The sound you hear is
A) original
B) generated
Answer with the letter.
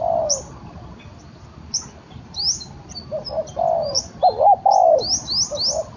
A